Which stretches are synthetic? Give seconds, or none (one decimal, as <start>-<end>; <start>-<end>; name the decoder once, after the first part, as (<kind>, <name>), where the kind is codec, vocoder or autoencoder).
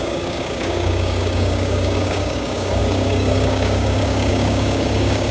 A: 0.0-5.3 (codec, DAC)